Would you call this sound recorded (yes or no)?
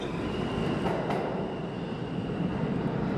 no